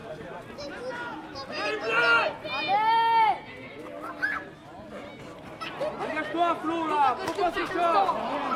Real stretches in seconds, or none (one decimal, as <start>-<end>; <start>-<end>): 0.0-8.6